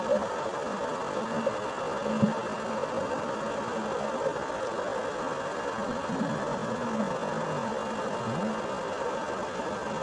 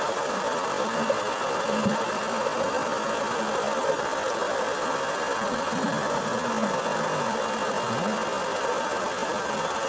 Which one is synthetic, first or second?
second